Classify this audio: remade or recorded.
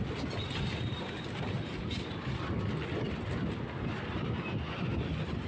recorded